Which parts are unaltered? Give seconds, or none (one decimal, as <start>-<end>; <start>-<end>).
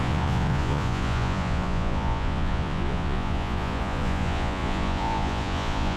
none